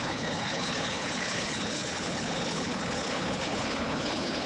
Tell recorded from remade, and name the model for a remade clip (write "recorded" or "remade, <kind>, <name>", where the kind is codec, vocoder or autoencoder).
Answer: remade, codec, HILCodec